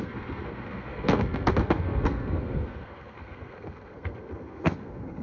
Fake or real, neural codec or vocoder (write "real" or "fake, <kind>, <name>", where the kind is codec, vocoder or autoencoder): fake, codec, SNAC